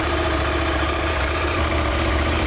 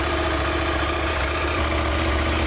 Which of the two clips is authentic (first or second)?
second